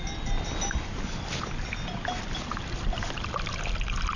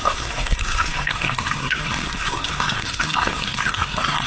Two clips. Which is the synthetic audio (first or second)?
second